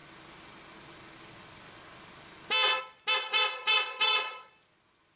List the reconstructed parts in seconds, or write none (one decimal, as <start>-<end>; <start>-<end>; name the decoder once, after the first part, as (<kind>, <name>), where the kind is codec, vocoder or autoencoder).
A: 3.3-4.5 (vocoder, Vocos)